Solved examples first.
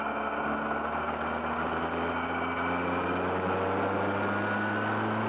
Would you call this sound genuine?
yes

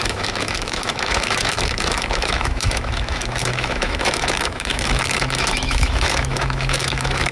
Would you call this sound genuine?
no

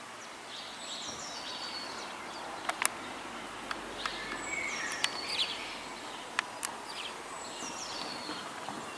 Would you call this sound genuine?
yes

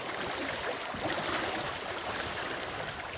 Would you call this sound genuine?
yes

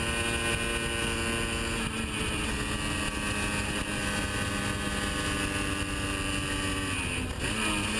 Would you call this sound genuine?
yes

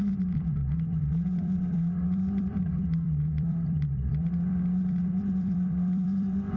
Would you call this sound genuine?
no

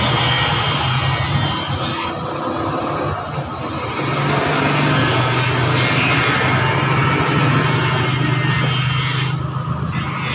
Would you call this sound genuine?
yes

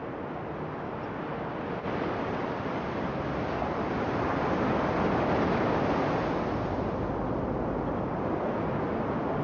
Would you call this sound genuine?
yes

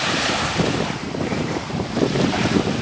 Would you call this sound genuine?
no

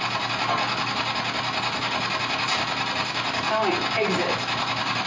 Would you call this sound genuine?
yes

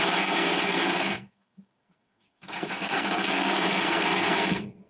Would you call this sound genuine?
no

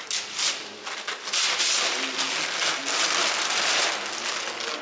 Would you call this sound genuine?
yes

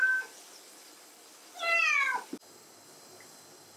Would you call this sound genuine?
yes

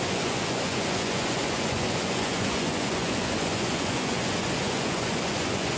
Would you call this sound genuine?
no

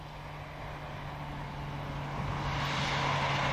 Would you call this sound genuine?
yes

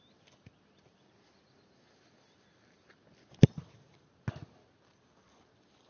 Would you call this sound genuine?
yes